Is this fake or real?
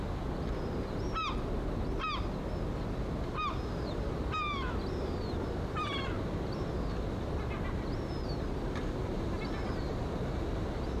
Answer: real